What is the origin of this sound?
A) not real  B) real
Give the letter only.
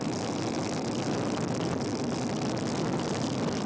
B